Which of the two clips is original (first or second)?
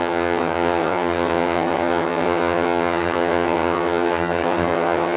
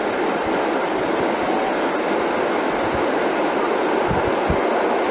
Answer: second